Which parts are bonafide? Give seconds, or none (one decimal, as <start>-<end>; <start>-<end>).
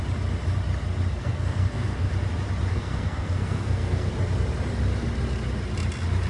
0.0-1.2; 2.1-2.7; 4.1-6.3